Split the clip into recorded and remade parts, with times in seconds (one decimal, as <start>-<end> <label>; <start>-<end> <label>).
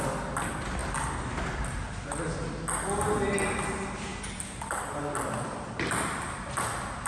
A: 0.0-7.1 recorded